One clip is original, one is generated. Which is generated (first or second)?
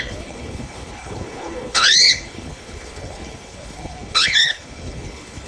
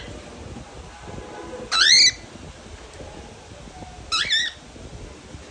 first